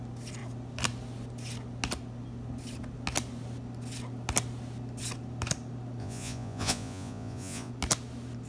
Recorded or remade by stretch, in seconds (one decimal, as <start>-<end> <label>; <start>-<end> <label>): 0.0-6.0 recorded; 6.0-7.7 remade; 7.7-8.5 recorded

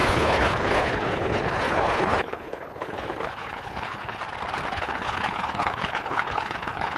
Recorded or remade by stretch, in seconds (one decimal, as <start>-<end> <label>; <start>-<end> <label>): 0.0-4.2 remade; 4.2-4.7 recorded; 4.7-7.0 remade

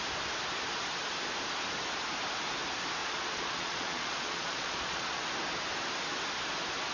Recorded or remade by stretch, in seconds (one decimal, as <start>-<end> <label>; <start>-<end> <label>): 0.0-3.0 recorded; 3.0-5.2 remade; 5.2-6.9 recorded

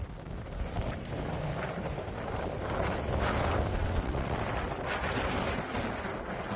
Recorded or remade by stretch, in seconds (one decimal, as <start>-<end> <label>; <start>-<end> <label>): 0.0-3.8 recorded; 3.8-4.4 remade; 4.4-6.6 recorded

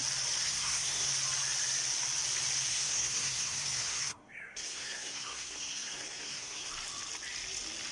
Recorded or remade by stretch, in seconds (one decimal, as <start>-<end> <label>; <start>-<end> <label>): 0.0-0.4 recorded; 0.4-1.1 remade; 1.1-2.7 recorded; 2.7-6.7 remade; 6.7-7.9 recorded

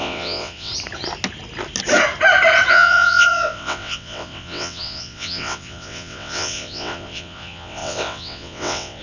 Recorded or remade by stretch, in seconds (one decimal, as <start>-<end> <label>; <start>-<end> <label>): 0.0-0.7 remade; 0.7-2.7 recorded; 2.7-9.0 remade

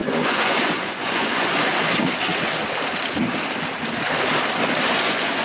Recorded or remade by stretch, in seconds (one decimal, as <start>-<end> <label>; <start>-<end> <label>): 0.0-1.7 remade; 1.7-4.9 recorded; 4.9-5.4 remade

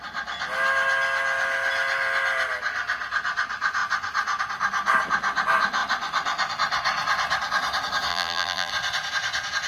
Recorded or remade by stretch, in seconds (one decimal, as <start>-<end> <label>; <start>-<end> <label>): 0.0-8.1 recorded; 8.1-8.7 remade; 8.7-9.7 recorded